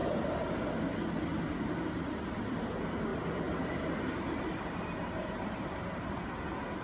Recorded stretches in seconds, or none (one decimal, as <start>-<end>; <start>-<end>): 0.5-3.1; 6.1-6.8